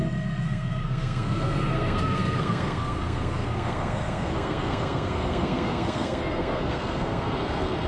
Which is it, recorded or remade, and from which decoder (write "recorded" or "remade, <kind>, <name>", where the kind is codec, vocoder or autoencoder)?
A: remade, codec, SNAC